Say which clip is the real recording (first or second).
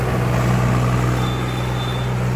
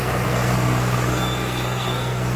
first